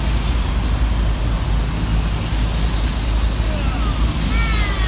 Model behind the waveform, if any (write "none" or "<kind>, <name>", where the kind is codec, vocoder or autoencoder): none